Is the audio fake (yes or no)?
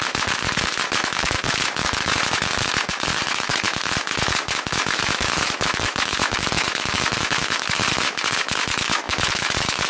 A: yes